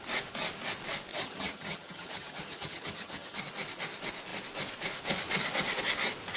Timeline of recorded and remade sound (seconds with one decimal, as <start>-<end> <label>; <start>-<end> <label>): 0.0-1.1 recorded; 1.1-3.4 remade; 3.4-6.4 recorded